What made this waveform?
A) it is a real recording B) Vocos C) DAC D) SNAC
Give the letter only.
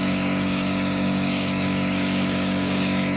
C